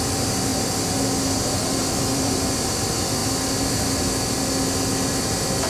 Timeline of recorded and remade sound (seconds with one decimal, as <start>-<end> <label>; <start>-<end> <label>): 0.0-0.5 remade; 0.5-2.0 recorded; 2.0-3.2 remade; 3.2-5.1 recorded; 5.1-5.7 remade